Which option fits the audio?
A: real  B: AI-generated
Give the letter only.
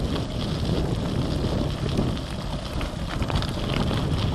A